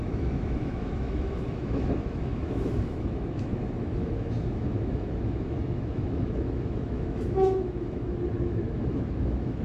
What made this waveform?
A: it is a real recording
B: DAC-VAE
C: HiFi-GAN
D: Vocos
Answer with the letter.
B